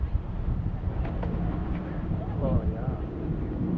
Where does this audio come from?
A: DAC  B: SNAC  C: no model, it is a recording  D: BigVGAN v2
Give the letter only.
D